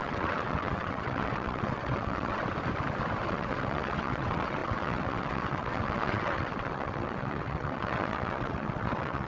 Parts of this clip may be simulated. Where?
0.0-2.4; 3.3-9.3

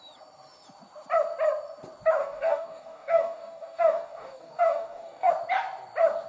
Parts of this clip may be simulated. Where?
2.2-5.3

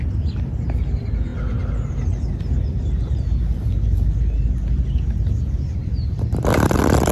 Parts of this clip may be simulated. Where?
5.8-7.1

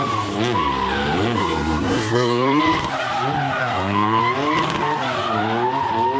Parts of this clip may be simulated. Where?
1.4-2.6; 3.6-4.2

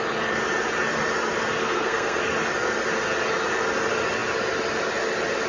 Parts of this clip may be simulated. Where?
1.6-2.2

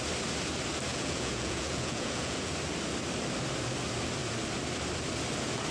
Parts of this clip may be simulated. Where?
0.9-2.5

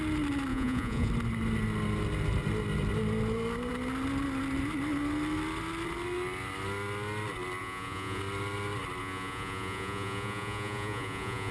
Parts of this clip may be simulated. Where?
0.5-1.1; 7.6-8.2; 9.0-11.5